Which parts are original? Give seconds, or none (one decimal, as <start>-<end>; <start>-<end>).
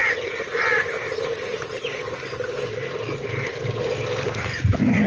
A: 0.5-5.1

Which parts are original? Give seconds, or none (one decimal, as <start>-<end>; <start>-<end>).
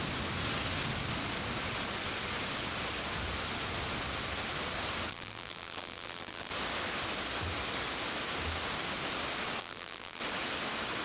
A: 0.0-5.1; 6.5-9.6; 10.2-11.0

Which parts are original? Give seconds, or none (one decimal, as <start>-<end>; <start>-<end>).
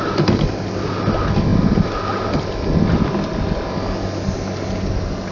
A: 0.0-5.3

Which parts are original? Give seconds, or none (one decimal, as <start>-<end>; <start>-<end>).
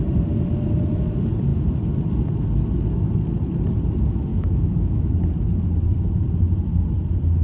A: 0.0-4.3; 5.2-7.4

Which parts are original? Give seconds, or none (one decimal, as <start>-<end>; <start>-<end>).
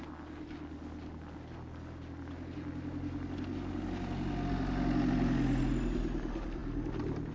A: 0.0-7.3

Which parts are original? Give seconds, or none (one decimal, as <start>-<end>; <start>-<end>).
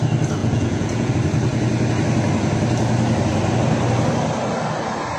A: 0.0-0.4; 1.1-5.2